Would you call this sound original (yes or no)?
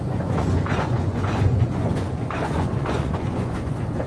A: no